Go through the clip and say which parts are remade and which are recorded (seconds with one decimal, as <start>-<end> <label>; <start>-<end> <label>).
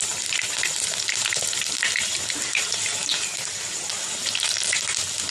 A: 0.0-5.3 recorded